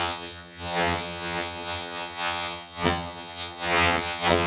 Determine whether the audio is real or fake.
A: fake